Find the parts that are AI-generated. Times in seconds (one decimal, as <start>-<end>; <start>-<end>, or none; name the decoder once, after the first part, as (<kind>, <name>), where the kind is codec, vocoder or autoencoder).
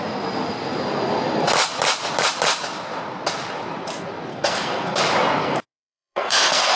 4.3-5.0 (codec, SNAC); 5.4-6.8